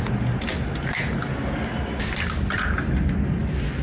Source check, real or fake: real